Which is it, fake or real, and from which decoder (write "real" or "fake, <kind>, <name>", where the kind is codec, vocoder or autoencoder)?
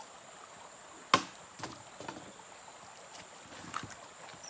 real